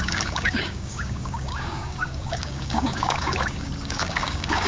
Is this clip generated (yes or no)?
yes